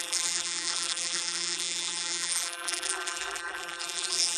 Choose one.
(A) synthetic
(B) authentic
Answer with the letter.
A